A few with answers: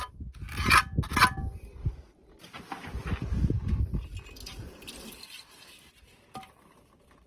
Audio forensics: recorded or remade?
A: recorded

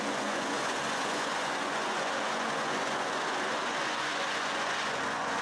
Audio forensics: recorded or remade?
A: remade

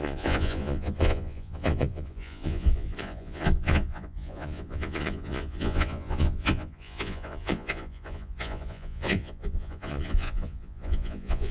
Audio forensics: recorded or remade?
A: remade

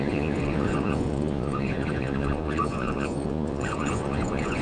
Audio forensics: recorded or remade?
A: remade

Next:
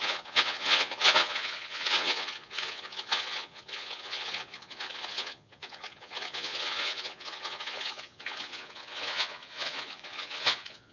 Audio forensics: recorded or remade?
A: remade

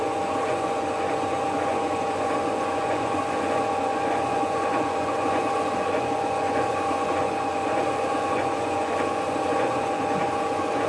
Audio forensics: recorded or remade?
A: remade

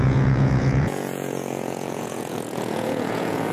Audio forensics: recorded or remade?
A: remade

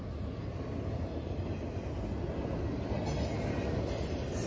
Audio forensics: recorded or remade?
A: recorded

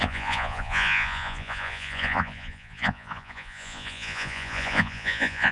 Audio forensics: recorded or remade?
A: remade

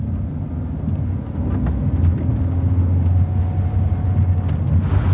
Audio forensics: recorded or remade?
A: recorded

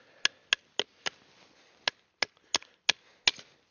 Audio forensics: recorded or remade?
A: recorded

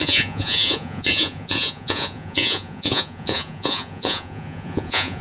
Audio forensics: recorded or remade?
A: remade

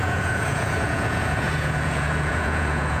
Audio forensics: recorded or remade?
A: remade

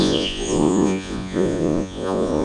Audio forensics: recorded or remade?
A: remade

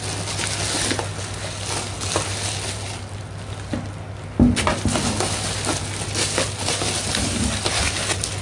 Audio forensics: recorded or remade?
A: recorded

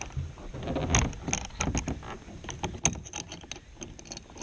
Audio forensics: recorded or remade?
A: recorded